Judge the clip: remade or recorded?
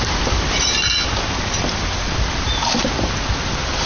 recorded